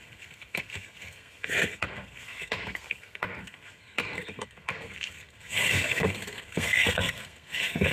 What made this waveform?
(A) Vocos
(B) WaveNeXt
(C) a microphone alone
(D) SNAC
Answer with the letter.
D